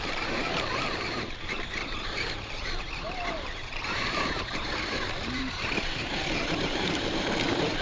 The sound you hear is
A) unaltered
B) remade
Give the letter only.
B